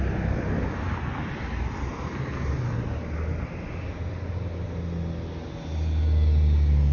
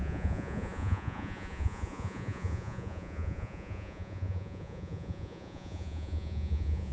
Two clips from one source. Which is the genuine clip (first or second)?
first